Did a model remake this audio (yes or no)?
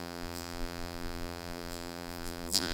yes